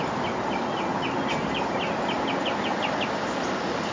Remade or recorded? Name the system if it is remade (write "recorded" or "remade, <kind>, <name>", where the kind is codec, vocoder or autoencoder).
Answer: recorded